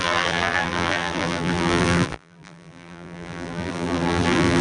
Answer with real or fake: fake